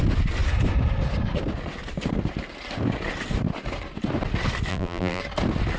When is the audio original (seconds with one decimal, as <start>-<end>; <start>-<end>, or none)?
0.0-4.7; 5.2-5.8